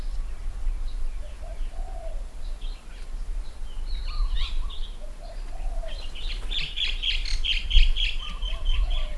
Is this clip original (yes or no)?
yes